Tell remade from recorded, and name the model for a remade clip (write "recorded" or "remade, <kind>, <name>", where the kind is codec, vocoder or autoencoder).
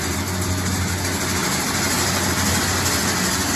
recorded